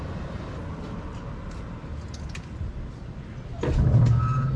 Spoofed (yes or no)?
no